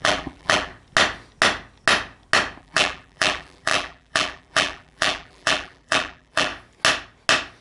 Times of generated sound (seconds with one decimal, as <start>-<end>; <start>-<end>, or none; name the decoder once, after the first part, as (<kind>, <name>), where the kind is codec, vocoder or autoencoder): 0.0-0.7 (vocoder, BigVGAN v2); 2.6-6.5